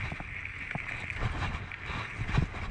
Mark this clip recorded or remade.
recorded